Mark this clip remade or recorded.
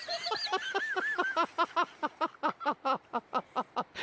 recorded